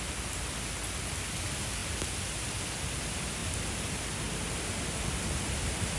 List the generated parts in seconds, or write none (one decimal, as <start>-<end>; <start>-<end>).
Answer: none